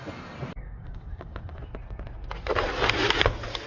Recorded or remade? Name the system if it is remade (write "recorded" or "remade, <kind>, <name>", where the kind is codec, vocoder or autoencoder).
recorded